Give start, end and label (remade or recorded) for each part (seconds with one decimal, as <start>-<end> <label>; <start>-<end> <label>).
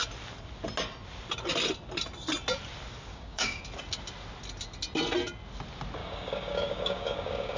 0.0-3.1 recorded; 3.1-3.6 remade; 3.6-6.0 recorded; 6.0-7.6 remade